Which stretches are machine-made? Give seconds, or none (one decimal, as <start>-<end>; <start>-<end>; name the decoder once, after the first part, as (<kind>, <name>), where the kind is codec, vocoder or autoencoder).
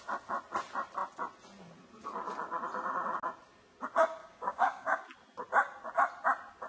4.2-5.0 (codec, DAC)